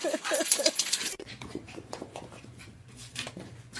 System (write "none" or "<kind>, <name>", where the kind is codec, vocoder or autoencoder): vocoder, Vocos